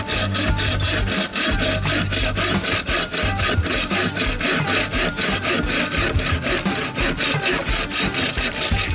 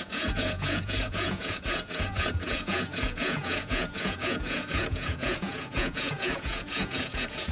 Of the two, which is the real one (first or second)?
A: first